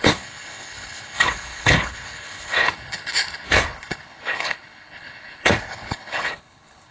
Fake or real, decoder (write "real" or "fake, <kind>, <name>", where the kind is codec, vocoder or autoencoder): fake, codec, HILCodec